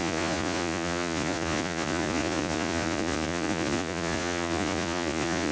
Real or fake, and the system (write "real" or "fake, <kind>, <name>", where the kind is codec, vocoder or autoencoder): fake, vocoder, Vocos